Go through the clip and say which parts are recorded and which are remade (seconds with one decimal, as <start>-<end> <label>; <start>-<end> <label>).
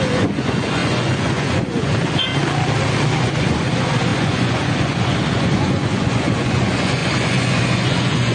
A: 0.0-2.3 remade; 2.3-3.2 recorded; 3.2-8.3 remade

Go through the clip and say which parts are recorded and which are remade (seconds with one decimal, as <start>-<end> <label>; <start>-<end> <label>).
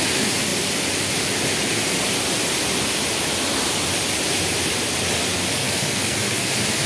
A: 0.0-5.5 recorded; 5.5-6.5 remade; 6.5-6.9 recorded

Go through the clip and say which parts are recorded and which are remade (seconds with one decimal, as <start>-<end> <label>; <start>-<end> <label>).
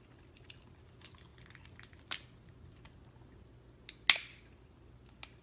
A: 0.0-5.4 recorded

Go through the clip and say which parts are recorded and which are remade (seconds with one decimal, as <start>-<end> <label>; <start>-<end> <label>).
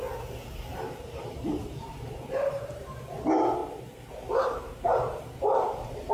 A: 0.0-0.7 recorded; 0.7-2.8 remade; 2.8-3.6 recorded; 3.6-6.1 remade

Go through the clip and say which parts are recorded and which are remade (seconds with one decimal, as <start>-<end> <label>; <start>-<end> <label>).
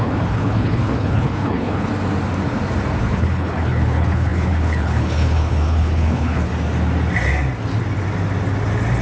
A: 0.0-1.9 remade; 1.9-3.0 recorded; 3.0-6.5 remade; 6.5-9.0 recorded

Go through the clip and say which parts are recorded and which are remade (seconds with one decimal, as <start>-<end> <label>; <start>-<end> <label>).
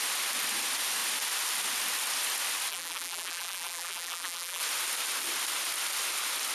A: 0.0-2.7 recorded; 2.7-4.6 remade; 4.6-6.5 recorded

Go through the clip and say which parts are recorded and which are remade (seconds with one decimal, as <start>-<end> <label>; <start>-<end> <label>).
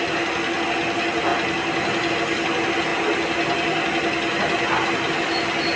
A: 0.0-5.8 recorded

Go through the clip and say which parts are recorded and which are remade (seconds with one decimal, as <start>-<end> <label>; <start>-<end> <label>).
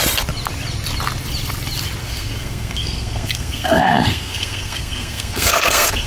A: 0.0-2.0 recorded; 2.0-6.1 remade